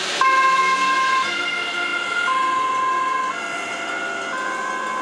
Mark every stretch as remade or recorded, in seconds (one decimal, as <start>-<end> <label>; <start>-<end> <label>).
0.0-5.0 recorded